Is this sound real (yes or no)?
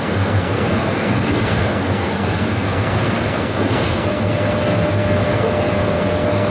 no